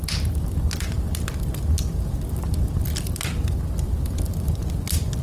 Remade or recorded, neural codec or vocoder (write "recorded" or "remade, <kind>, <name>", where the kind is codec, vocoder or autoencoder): recorded